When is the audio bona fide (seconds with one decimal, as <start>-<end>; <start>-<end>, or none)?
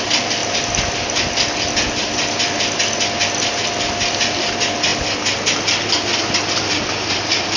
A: 0.0-7.6